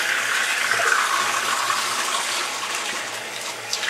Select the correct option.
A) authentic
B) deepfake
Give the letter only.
B